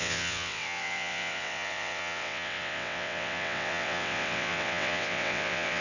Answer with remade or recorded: remade